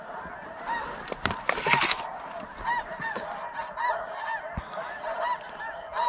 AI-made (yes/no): no